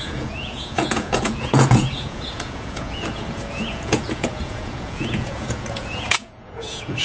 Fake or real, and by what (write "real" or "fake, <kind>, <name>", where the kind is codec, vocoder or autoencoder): fake, vocoder, Vocos